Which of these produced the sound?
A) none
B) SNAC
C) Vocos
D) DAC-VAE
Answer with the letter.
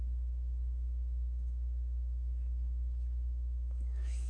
D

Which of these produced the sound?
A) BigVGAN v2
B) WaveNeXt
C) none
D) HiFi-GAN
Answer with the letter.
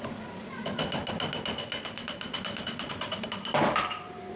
C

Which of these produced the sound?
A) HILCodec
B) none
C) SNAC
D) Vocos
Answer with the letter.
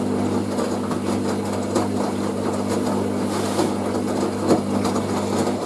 B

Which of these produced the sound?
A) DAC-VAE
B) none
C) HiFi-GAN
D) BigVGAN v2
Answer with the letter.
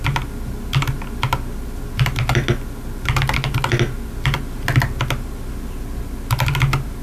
B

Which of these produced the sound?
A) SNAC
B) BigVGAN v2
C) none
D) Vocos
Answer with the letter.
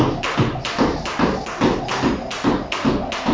C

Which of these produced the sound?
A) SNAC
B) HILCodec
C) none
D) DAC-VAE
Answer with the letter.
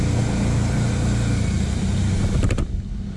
C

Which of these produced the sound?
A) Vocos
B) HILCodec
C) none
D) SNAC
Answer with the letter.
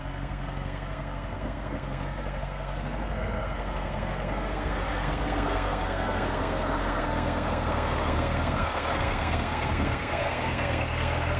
D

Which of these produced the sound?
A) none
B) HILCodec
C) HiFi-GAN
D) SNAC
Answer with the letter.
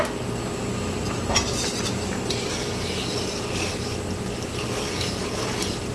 A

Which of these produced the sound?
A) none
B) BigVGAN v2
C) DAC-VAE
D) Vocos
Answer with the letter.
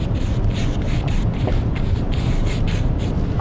B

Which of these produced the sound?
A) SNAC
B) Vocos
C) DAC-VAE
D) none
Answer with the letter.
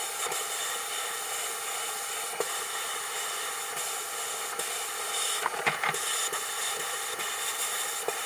D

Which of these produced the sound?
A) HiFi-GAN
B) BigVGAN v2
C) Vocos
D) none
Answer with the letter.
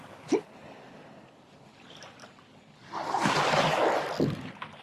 D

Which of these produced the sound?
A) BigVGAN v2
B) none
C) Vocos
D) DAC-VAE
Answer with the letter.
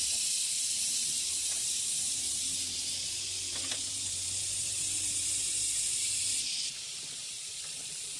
A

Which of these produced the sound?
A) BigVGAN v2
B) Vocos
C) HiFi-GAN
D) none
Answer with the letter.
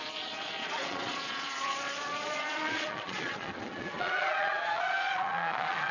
B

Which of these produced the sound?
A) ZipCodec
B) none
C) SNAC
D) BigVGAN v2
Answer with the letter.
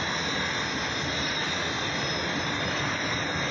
B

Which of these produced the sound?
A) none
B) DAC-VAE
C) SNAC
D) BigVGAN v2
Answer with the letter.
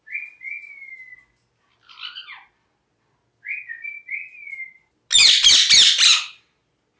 A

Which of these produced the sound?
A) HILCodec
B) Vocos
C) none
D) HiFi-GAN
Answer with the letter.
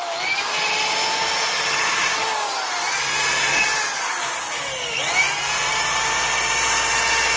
C